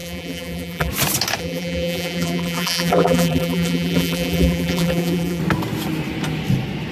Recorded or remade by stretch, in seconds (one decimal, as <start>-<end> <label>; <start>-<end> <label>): 0.0-0.9 remade; 0.9-1.4 recorded; 1.4-5.4 remade; 5.4-6.9 recorded